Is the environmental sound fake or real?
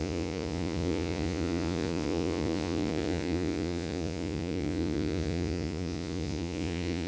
fake